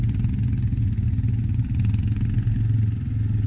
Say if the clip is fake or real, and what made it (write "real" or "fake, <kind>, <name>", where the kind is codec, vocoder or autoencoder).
real